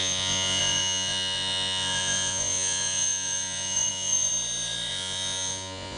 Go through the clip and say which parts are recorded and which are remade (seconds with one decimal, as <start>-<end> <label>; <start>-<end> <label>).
0.0-4.3 remade; 4.3-4.9 recorded; 4.9-6.0 remade